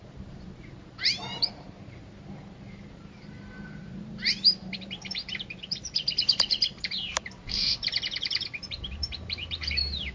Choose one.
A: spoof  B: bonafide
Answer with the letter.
A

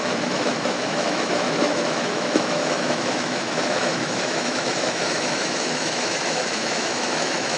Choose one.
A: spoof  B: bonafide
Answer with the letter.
A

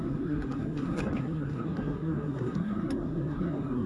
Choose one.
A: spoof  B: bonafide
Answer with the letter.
A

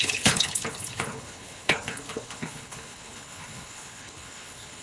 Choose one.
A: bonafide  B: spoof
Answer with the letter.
B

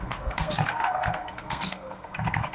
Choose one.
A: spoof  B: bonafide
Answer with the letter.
A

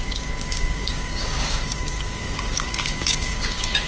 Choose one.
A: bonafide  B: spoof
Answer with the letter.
B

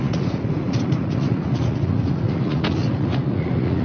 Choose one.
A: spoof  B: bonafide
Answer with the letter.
A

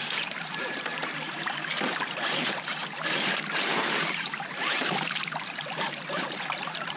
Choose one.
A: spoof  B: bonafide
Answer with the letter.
A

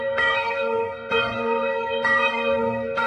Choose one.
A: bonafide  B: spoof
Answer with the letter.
B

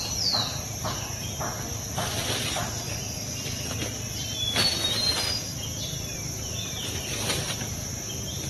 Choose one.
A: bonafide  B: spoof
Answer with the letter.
A